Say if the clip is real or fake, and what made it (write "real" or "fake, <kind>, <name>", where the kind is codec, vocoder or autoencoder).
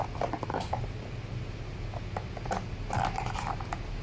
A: real